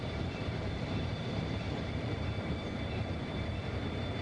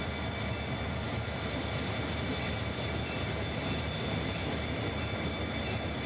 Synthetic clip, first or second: first